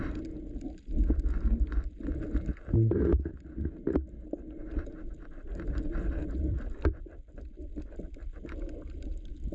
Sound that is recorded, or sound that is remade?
recorded